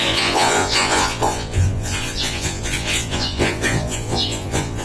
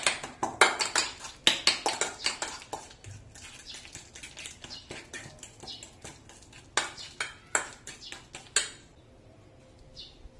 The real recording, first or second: second